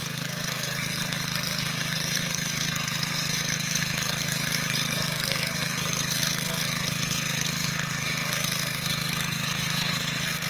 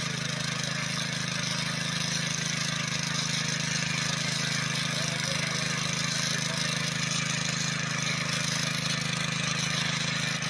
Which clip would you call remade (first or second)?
first